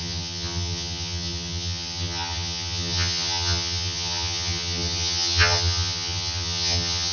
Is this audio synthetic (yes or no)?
yes